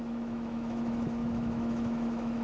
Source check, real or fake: fake